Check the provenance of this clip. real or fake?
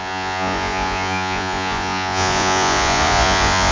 fake